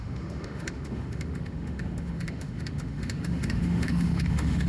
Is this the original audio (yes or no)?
no